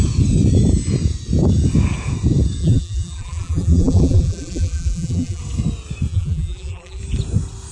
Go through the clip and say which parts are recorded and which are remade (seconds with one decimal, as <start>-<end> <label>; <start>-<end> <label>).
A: 0.0-2.6 recorded; 2.6-5.4 remade; 5.4-6.1 recorded; 6.1-7.0 remade; 7.0-7.7 recorded